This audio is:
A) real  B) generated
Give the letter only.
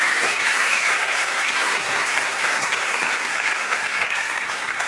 B